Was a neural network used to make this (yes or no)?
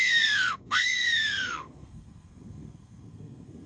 yes